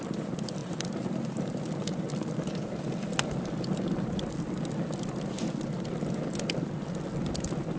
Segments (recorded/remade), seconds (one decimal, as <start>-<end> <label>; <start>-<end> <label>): 0.0-7.8 recorded